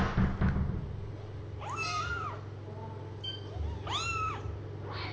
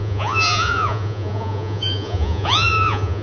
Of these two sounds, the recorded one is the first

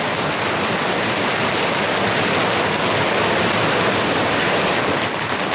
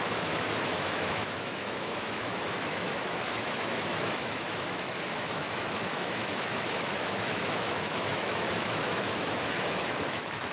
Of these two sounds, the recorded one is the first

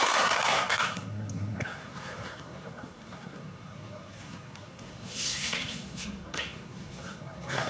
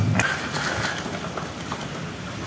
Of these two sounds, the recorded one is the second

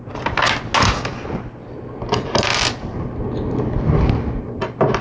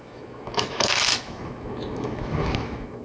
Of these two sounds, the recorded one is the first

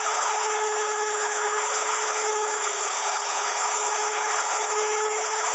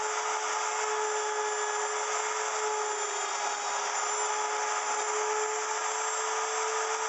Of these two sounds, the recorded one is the second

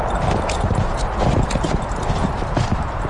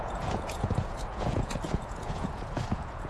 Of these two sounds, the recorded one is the first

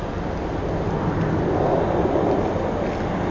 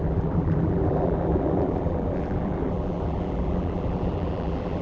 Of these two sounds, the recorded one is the first